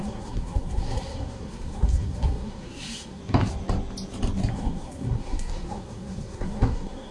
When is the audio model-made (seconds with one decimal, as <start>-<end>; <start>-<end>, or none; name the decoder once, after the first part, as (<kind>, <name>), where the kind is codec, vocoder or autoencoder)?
0.0-3.2 (codec, SNAC); 4.5-7.1